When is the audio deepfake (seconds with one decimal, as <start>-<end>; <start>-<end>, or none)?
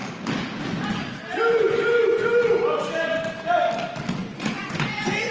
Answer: 4.2-5.3